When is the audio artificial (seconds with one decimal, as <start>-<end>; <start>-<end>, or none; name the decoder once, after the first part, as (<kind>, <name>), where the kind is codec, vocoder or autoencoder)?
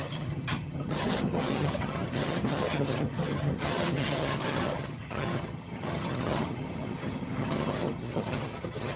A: 0.0-9.0 (vocoder, HiFi-GAN)